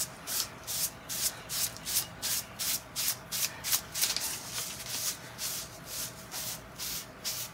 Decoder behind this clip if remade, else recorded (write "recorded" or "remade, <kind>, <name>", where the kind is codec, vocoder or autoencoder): recorded